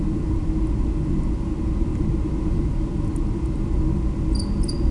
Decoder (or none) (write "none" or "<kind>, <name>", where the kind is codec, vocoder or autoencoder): none